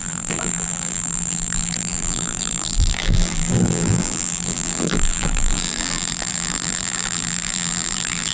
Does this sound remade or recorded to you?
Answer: remade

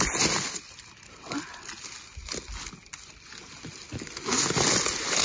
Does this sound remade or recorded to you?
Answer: recorded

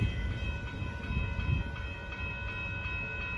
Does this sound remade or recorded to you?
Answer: recorded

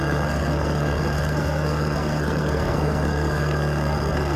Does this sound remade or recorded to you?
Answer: remade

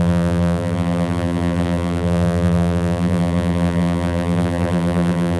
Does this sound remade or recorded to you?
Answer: remade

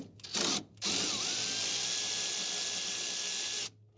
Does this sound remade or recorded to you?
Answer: recorded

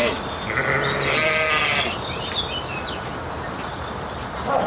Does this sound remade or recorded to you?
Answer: recorded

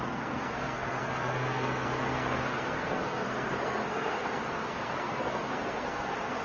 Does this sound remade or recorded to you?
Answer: remade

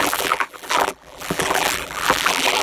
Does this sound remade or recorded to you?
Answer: remade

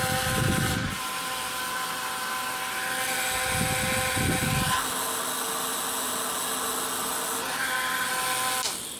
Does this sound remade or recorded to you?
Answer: recorded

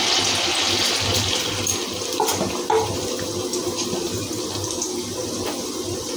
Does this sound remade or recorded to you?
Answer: remade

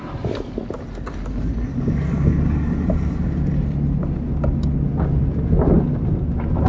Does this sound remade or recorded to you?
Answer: recorded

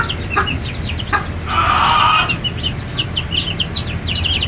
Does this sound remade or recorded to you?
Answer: recorded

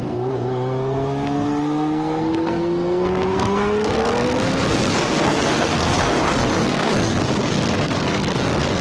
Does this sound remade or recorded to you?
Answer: remade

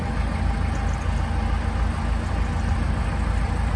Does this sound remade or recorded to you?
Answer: recorded